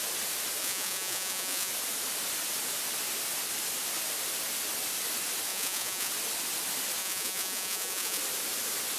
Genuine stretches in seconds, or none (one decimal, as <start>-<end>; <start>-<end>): 0.0-0.6; 1.7-5.5; 6.1-7.0; 8.2-9.0

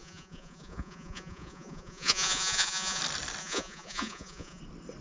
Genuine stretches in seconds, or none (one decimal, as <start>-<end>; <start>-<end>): 3.0-3.4; 4.6-5.0

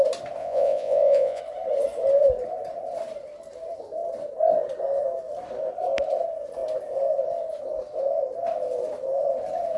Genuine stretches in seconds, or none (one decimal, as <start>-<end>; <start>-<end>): 0.0-0.4; 1.4-9.8

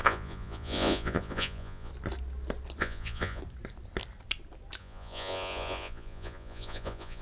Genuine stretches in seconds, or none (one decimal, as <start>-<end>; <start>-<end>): 1.9-2.8; 3.4-4.8

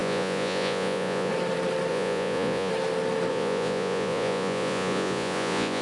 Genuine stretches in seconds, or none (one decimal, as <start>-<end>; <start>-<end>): 1.3-1.9; 2.7-3.3

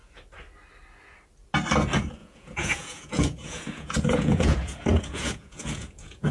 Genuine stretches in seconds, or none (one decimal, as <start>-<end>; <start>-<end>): 0.0-2.2

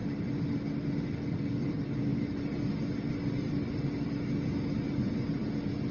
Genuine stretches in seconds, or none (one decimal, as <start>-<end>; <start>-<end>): 0.0-5.9